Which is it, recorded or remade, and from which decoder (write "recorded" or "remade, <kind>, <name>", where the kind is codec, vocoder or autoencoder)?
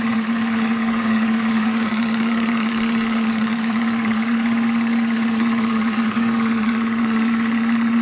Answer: remade, codec, DAC